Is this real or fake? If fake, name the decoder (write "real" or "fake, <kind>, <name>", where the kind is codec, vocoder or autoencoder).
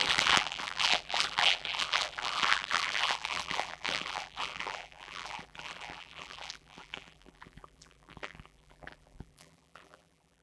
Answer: fake, vocoder, BigVGAN v2